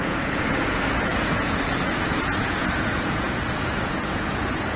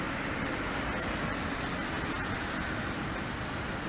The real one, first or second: second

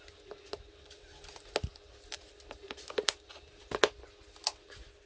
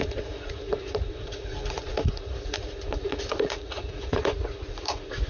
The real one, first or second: first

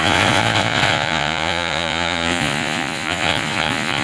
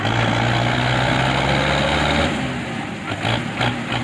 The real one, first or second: second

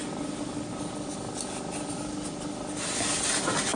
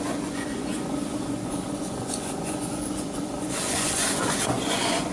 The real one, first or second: first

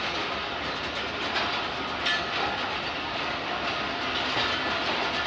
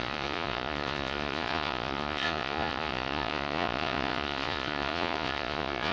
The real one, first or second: first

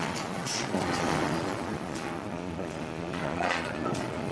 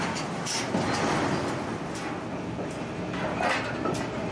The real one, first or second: second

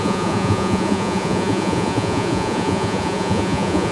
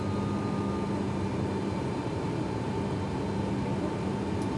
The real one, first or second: second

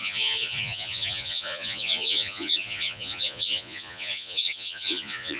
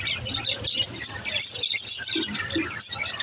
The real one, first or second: second